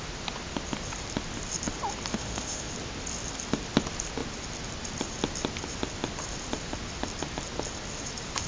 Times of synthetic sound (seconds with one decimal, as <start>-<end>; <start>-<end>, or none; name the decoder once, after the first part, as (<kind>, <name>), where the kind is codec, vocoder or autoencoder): 2.1-2.7 (codec, ZipCodec)